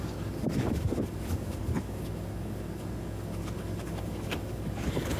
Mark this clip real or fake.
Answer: fake